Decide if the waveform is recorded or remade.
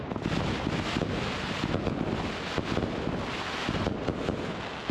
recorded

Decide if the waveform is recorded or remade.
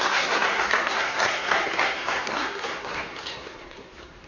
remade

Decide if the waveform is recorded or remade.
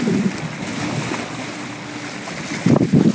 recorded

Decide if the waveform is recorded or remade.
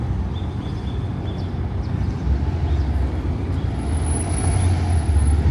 recorded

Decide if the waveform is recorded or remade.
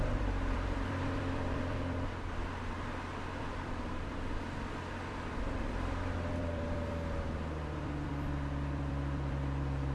remade